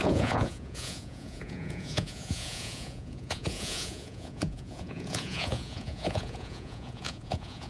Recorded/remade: remade